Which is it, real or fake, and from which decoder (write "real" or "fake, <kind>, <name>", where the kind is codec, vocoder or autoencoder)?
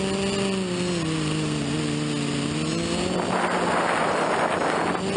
real